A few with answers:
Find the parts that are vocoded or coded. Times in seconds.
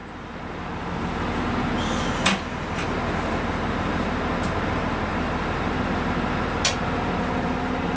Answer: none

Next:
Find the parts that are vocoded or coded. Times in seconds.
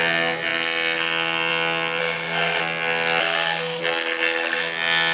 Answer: 2.0-2.6 (codec, SNAC); 3.2-3.8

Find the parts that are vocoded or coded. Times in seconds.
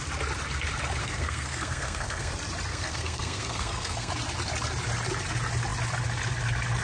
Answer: 1.0-2.3 (codec, SNAC); 2.7-4.1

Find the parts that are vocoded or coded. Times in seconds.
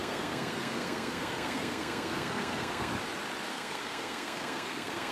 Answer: 0.0-2.9 (codec, SNAC); 3.5-5.1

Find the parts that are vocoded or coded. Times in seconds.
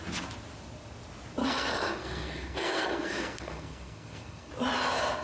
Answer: 1.4-4.5 (codec, SNAC)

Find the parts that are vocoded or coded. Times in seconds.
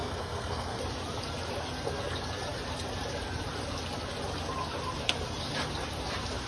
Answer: 0.0-0.8 (codec, SNAC)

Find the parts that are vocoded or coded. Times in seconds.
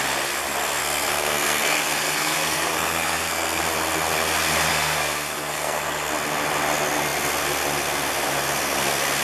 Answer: 0.8-3.6 (codec, SNAC); 4.7-6.1